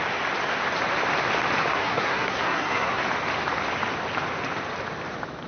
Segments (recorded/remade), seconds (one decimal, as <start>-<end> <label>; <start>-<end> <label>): 0.0-1.7 recorded; 1.7-3.0 remade; 3.0-5.5 recorded